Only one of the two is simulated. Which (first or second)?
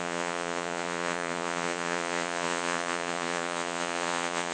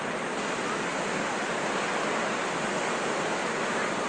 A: first